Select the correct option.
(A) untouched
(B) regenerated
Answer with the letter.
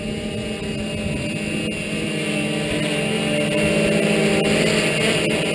A